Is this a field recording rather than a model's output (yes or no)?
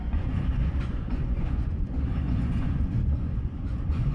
no